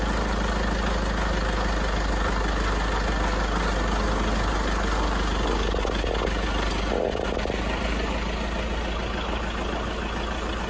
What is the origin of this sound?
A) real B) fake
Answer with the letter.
A